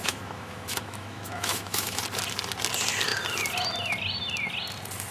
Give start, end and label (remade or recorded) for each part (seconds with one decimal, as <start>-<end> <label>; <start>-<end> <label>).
0.0-2.0 remade; 2.0-5.1 recorded